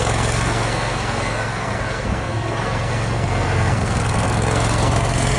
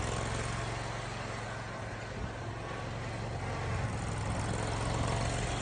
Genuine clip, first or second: second